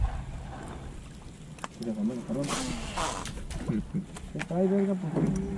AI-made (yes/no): no